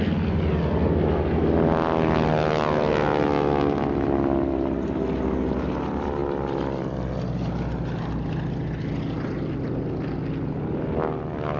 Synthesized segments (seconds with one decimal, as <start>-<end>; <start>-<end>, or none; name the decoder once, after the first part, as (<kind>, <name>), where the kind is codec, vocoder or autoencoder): none